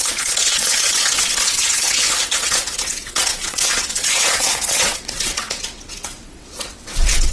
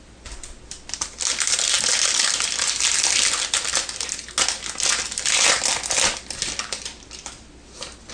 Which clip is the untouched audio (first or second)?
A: second